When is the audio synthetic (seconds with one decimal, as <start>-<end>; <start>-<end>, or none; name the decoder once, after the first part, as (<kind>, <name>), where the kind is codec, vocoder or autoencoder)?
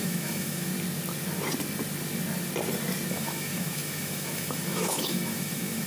0.0-0.7 (autoencoder, DAC-VAE); 3.1-5.9